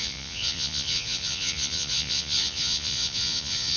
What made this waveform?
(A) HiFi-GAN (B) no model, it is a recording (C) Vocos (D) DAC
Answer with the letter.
C